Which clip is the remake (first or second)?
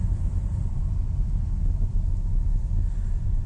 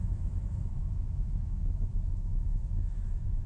second